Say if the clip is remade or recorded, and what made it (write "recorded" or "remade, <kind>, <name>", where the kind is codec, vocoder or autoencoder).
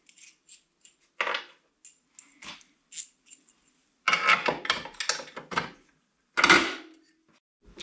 recorded